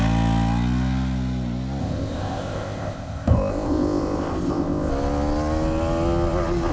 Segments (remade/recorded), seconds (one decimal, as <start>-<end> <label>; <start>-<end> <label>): 0.0-1.8 recorded; 1.8-4.9 remade; 4.9-6.7 recorded